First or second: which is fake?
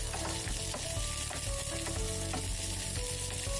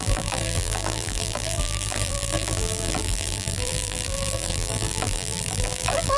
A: second